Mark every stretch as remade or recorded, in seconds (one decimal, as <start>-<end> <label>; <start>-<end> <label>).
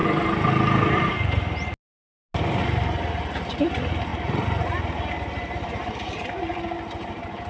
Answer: 0.0-7.5 recorded